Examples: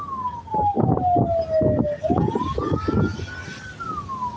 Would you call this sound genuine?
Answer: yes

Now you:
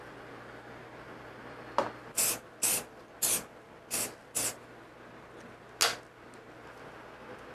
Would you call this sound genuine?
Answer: yes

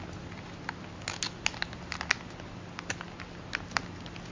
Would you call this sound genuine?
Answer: yes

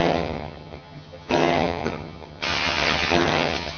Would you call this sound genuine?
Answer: no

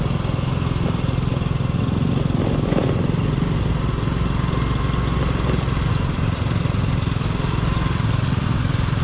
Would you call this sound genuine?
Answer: yes